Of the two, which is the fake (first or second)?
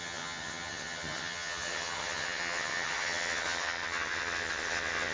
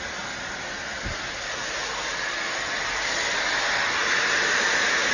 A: first